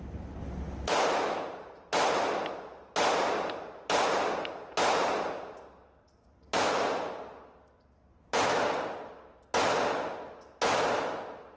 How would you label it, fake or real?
real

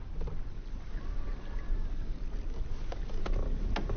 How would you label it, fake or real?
real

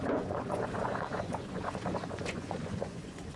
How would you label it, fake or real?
fake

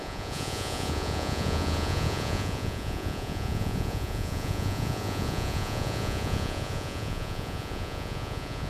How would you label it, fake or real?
fake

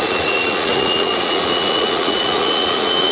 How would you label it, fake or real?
fake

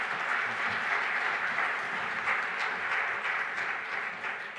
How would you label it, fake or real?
real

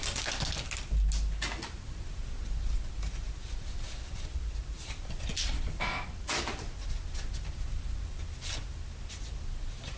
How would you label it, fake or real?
real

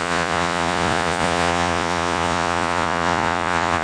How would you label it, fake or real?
fake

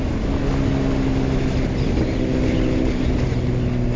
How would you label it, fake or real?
real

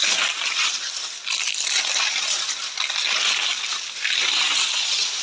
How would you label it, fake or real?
real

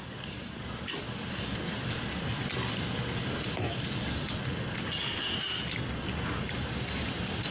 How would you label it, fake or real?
real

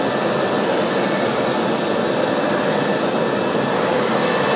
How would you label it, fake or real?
real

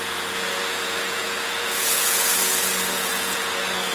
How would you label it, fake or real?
fake